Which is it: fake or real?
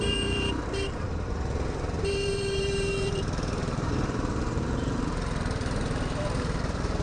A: fake